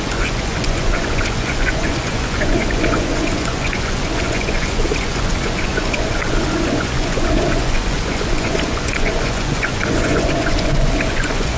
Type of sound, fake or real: fake